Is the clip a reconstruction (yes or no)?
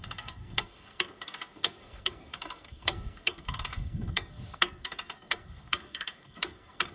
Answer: yes